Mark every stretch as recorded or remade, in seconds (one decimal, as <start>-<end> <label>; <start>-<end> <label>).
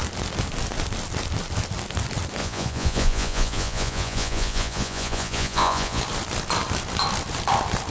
0.0-2.4 recorded; 2.4-6.0 remade; 6.0-7.9 recorded